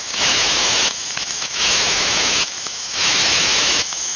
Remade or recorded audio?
remade